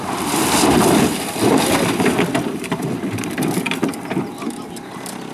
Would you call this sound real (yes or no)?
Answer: no